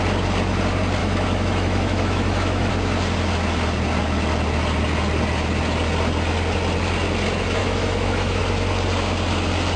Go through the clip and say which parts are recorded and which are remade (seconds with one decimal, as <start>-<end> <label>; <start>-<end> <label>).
0.0-1.0 recorded; 1.0-2.7 remade; 2.7-7.6 recorded; 7.6-8.4 remade; 8.4-9.8 recorded